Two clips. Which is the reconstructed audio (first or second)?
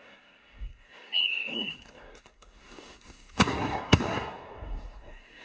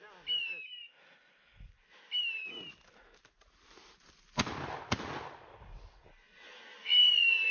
first